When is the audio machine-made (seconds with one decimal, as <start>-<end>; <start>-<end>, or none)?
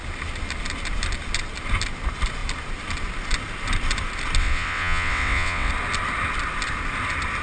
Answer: 4.4-5.7